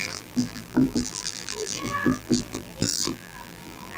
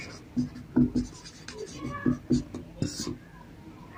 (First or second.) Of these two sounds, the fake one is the first